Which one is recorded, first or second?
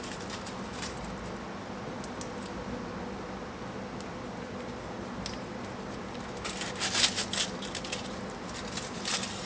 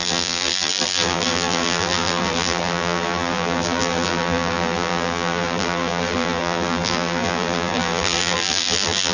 first